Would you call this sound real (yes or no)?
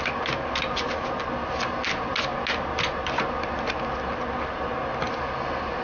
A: yes